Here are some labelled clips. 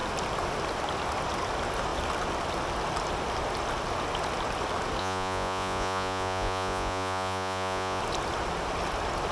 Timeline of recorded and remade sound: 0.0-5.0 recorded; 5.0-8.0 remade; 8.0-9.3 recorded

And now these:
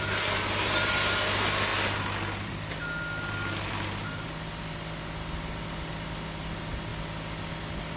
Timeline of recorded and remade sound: 0.0-8.0 recorded

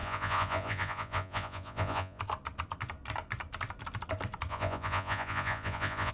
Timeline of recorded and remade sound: 0.0-2.2 remade; 2.2-4.5 recorded; 4.5-6.1 remade

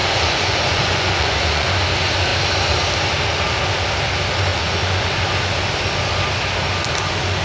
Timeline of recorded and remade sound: 0.0-1.7 remade; 1.7-4.5 recorded; 4.5-5.1 remade; 5.1-7.4 recorded

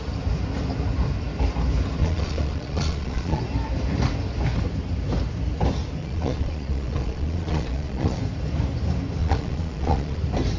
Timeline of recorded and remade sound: 0.0-2.0 recorded; 2.0-3.4 remade; 3.4-6.0 recorded; 6.0-8.2 remade; 8.2-9.2 recorded; 9.2-10.2 remade; 10.2-10.6 recorded